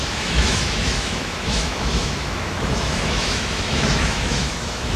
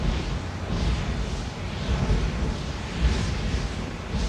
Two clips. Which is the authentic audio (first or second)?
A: second